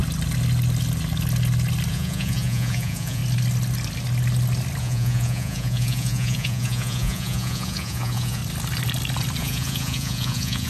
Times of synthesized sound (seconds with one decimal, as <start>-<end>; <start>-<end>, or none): 1.9-3.2; 4.8-8.4; 9.4-10.7